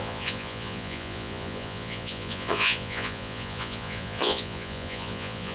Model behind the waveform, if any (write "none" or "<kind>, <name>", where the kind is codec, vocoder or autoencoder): vocoder, Vocos